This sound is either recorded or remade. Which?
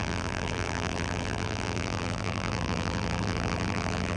remade